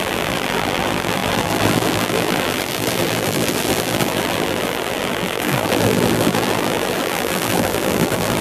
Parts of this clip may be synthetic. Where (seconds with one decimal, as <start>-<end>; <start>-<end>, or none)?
0.0-8.4